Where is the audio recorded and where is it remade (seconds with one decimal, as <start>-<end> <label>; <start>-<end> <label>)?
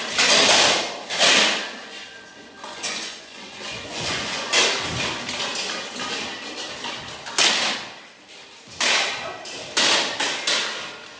0.0-1.8 recorded; 1.8-4.5 remade; 4.5-11.2 recorded